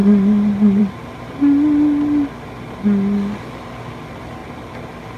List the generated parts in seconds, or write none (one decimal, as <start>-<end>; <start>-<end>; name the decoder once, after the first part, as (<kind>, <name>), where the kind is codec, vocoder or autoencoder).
0.0-0.8 (vocoder, BigVGAN v2)